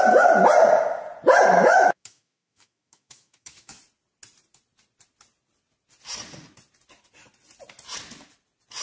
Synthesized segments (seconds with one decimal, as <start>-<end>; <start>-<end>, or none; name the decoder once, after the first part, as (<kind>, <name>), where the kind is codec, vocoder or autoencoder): 1.5-3.8 (autoencoder, DAC-VAE)